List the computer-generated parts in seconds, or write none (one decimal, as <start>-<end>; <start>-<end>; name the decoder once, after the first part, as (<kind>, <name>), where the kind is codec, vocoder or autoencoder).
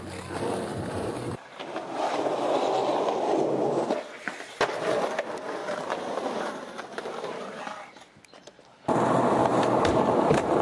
0.7-2.5 (vocoder, BigVGAN v2); 5.6-7.6; 9.4-10.6